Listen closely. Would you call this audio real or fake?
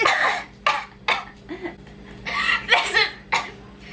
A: real